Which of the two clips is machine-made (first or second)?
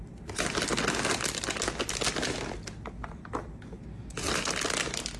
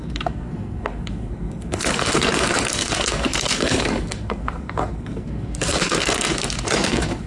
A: second